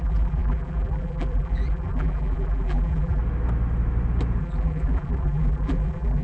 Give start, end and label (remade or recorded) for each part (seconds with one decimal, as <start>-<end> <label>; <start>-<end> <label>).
0.0-3.2 remade; 3.2-4.4 recorded; 4.4-6.2 remade